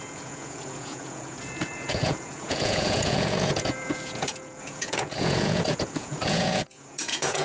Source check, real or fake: fake